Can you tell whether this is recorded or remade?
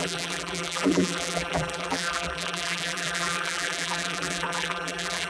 remade